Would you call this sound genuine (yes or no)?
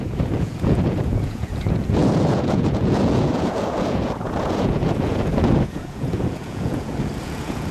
no